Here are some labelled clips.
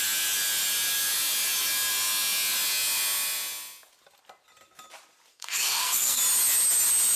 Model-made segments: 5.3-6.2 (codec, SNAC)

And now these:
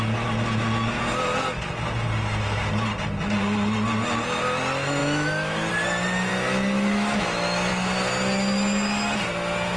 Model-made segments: 5.0-5.7 (autoencoder, DAC-VAE); 6.3-7.7